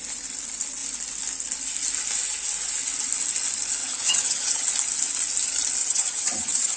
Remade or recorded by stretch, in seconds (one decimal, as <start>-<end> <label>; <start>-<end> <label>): 0.0-3.8 recorded; 3.8-4.7 remade; 4.7-5.8 recorded; 5.8-6.8 remade